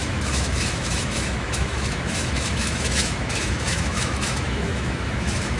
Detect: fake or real fake